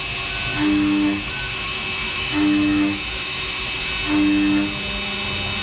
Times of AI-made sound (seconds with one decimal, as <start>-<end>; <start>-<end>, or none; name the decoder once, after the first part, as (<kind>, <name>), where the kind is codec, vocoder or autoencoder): 0.5-3.9 (autoencoder, DAC-VAE)